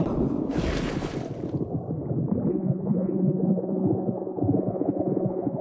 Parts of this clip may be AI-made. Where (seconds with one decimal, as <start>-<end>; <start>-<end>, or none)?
2.5-5.6